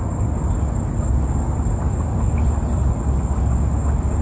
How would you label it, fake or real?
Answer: real